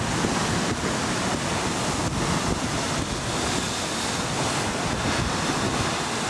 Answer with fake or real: real